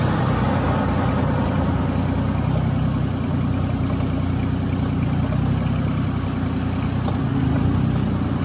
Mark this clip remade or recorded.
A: recorded